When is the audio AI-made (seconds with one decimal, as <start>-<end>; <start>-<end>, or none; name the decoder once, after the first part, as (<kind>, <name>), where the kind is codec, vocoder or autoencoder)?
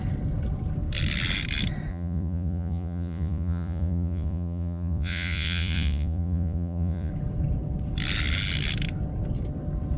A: 1.9-7.1 (vocoder, Vocos)